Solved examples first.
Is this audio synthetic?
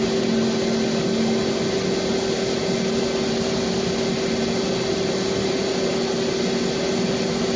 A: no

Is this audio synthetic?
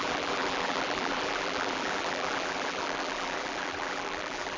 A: yes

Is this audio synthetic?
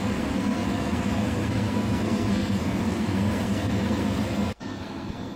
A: yes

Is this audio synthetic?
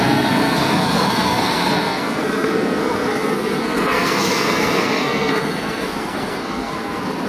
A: yes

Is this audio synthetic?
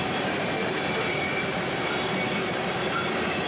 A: no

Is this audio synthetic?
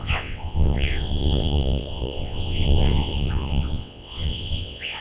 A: yes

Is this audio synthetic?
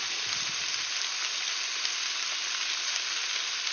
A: no